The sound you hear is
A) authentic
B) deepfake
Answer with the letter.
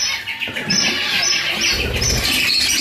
A